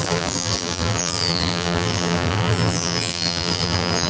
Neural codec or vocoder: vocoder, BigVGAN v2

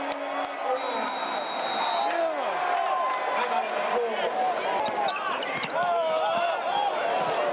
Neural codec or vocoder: none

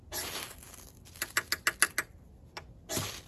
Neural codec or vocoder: none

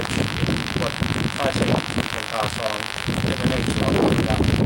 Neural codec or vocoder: autoencoder, DAC-VAE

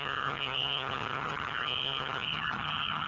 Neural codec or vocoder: vocoder, HiFi-GAN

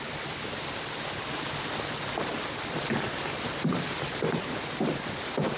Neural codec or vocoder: none